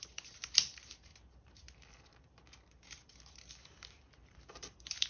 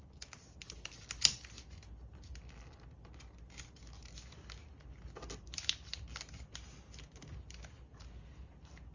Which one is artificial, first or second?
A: first